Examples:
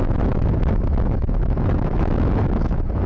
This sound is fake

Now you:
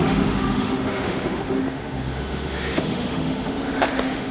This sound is fake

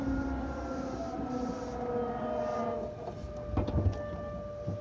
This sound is real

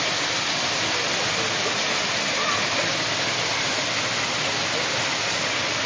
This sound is real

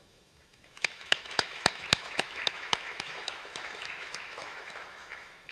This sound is fake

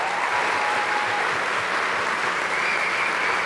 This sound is real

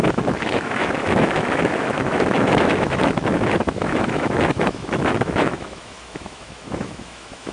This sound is fake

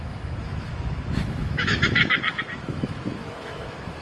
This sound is fake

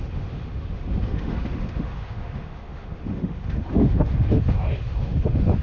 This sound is fake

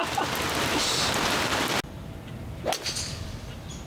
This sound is real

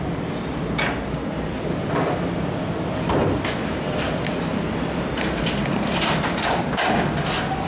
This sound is real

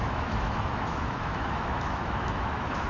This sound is fake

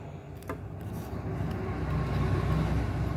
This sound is real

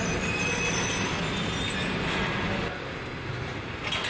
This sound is real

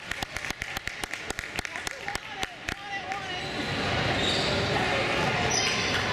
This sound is real